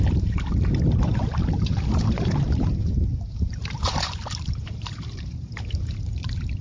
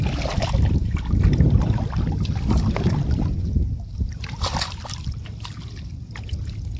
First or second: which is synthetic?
first